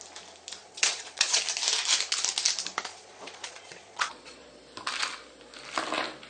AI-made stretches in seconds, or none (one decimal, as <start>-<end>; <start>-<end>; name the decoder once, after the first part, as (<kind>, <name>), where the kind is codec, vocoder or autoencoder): 0.6-1.4 (vocoder, Vocos); 2.9-4.5